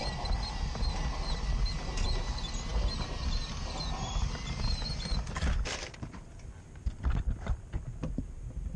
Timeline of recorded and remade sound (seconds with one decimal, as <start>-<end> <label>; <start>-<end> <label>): 0.0-8.8 recorded